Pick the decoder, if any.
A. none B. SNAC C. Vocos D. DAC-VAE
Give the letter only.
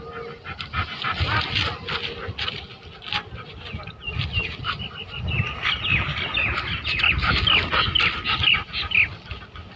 A